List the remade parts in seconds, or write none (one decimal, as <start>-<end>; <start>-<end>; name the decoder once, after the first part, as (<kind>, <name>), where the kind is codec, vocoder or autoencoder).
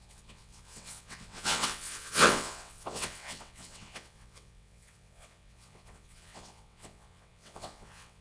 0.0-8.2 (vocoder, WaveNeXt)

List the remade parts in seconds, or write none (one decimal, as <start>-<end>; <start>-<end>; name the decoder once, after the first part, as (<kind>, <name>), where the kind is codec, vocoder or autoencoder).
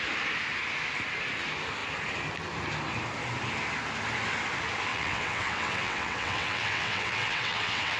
4.9-8.0 (vocoder, WaveNeXt)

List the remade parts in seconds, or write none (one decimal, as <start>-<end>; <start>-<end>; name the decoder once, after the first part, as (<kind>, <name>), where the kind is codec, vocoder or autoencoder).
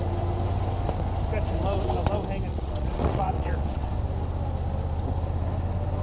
2.5-3.9 (vocoder, WaveNeXt)